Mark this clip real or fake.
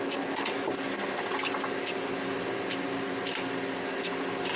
real